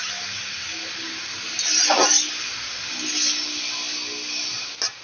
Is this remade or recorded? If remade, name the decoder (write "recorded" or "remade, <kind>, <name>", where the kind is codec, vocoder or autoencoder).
recorded